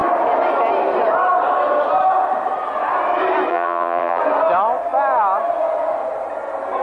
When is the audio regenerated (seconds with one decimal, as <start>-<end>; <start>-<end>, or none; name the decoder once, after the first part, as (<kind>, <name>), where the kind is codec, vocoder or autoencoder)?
3.5-4.2 (vocoder, BigVGAN v2)